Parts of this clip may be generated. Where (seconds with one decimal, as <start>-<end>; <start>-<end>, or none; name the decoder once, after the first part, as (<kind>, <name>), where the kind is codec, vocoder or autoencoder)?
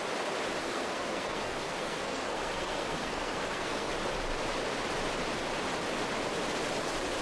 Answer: 0.6-3.9 (codec, SNAC)